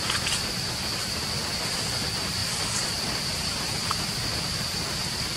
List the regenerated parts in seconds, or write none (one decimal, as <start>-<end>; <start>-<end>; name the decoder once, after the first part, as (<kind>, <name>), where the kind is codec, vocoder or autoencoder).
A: none